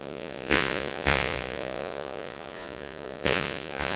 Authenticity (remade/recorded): remade